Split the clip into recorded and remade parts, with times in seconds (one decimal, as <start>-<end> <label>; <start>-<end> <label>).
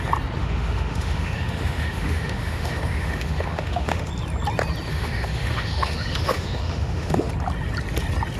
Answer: 0.0-0.4 recorded; 0.4-4.1 remade; 4.1-4.9 recorded; 4.9-7.3 remade; 7.3-8.4 recorded